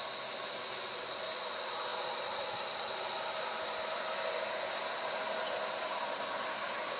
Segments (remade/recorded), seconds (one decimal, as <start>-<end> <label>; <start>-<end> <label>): 0.0-7.0 recorded